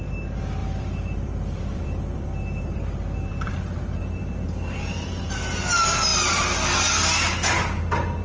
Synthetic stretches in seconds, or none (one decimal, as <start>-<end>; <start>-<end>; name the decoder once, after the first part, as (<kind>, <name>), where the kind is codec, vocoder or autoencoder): 0.6-3.5 (vocoder, BigVGAN v2); 4.0-5.2

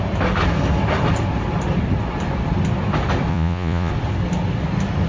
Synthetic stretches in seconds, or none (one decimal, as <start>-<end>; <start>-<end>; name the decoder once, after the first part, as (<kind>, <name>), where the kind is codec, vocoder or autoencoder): 3.3-3.9 (vocoder, Vocos)

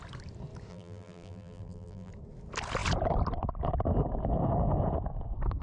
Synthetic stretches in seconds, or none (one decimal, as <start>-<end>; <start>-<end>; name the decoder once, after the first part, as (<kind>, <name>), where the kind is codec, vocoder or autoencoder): 0.7-2.1 (vocoder, BigVGAN v2)